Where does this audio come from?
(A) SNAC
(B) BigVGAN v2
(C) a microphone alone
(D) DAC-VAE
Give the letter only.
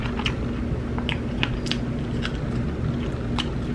C